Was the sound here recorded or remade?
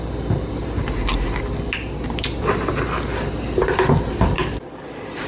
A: recorded